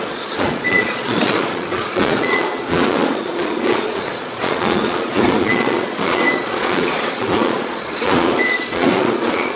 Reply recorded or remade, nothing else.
remade